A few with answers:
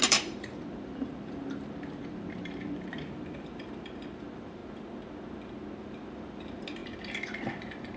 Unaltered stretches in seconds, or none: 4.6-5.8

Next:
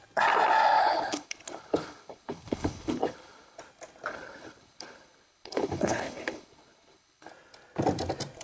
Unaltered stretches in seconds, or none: 0.0-0.8; 3.6-4.1; 7.3-8.4

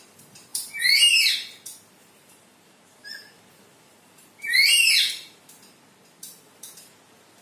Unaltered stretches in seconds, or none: 0.0-0.5; 1.3-2.0; 5.4-7.4

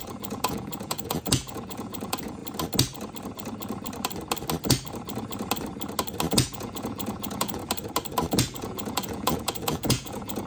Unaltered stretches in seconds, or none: 2.4-6.3; 7.6-8.3

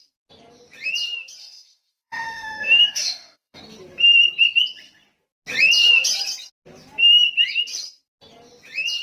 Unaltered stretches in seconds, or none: 0.0-1.4; 3.6-9.0